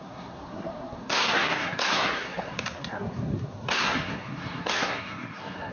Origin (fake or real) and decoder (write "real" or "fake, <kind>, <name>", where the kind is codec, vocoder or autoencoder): fake, codec, SNAC